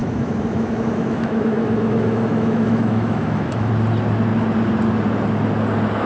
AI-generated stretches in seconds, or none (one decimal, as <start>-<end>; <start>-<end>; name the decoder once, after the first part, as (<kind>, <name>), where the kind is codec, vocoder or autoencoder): 0.0-3.7 (autoencoder, DAC-VAE)